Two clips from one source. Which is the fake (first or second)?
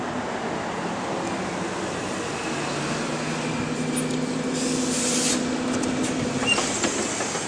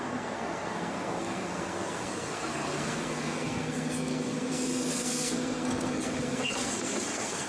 second